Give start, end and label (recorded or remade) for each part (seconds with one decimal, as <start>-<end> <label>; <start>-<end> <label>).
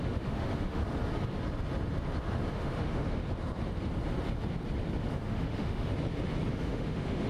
0.0-0.8 remade; 0.8-2.5 recorded; 2.5-3.2 remade; 3.2-5.1 recorded; 5.1-5.9 remade; 5.9-6.5 recorded; 6.5-7.3 remade